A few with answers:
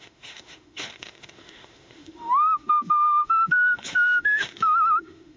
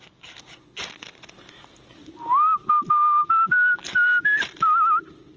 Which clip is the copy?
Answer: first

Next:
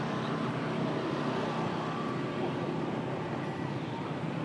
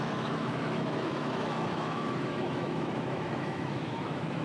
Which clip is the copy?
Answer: second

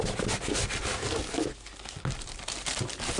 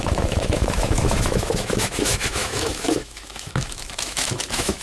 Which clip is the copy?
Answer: second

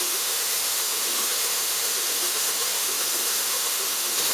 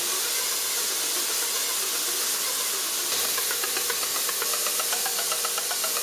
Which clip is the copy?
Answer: first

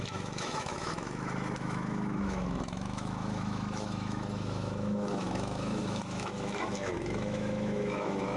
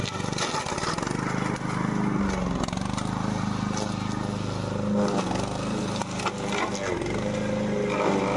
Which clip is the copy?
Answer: first